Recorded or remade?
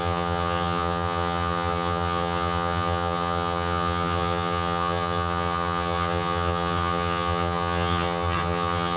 remade